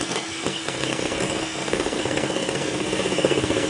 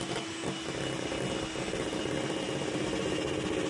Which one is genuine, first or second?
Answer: second